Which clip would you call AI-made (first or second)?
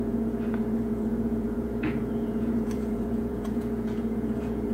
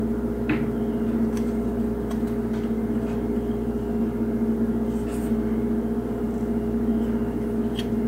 first